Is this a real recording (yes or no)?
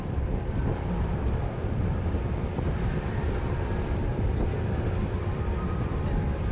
no